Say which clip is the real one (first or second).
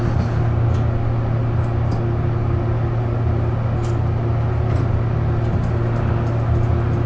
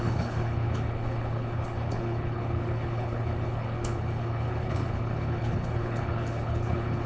first